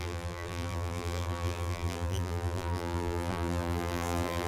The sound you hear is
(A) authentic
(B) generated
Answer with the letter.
B